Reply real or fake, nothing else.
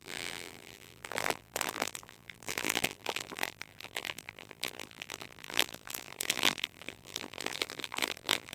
fake